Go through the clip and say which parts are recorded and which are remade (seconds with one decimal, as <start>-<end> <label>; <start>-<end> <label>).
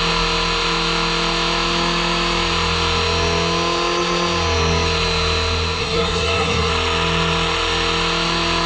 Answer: 0.0-5.8 recorded; 5.8-6.7 remade; 6.7-8.7 recorded